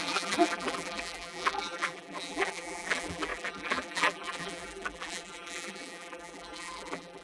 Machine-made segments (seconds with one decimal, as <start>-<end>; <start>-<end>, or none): 0.0-7.2